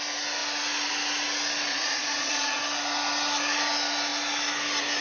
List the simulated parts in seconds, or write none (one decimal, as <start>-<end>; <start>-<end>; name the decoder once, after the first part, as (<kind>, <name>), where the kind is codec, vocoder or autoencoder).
1.7-2.6 (vocoder, Vocos)